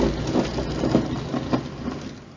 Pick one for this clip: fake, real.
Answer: real